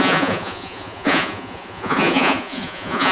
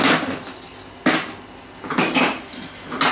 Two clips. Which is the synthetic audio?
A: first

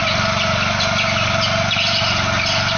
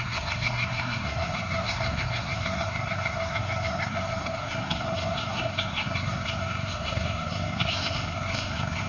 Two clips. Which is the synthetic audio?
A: second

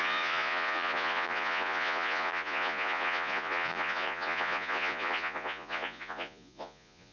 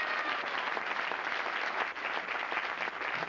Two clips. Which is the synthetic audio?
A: first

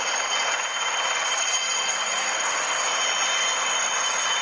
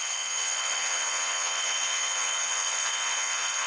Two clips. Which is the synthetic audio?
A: second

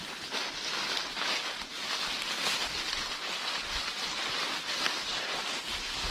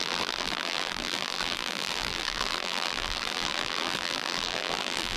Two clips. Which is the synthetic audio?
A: second